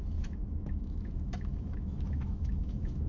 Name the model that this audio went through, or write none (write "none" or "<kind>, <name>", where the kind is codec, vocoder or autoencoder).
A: autoencoder, DAC-VAE